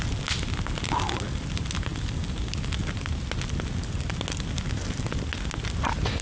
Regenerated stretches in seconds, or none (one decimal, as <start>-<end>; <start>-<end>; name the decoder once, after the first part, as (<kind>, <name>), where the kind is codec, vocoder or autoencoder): none